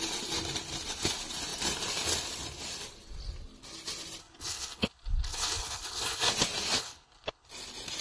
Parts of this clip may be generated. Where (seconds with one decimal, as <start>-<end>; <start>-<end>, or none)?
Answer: 4.2-6.3; 6.8-7.5